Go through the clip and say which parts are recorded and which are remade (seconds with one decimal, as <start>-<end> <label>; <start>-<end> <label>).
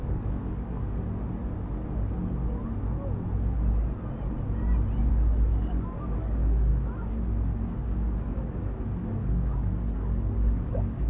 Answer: 0.0-1.4 remade; 1.4-5.1 recorded; 5.1-6.7 remade; 6.7-7.7 recorded; 7.7-8.6 remade; 8.6-9.1 recorded; 9.1-11.1 remade